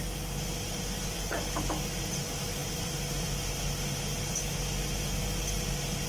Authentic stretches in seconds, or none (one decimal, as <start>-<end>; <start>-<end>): 0.0-6.1